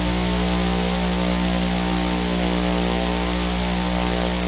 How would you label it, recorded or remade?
recorded